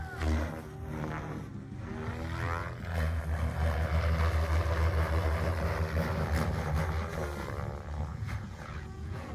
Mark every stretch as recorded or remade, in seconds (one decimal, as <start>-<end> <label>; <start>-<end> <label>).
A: 0.0-2.6 recorded; 2.6-3.2 remade; 3.2-8.1 recorded; 8.1-9.3 remade